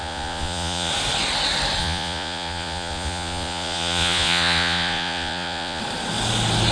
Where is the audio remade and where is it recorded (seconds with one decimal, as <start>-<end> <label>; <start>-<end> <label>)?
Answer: 0.0-0.9 remade; 0.9-1.8 recorded; 1.8-5.8 remade; 5.8-6.7 recorded